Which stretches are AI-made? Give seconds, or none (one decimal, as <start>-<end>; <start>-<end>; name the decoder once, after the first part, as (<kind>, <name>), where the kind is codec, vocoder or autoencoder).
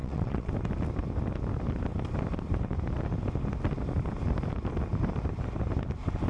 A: 0.0-0.5 (vocoder, WaveNeXt)